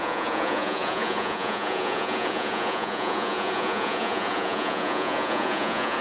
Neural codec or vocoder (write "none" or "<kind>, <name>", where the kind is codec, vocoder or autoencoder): vocoder, Vocos